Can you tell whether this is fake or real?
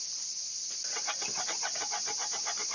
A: real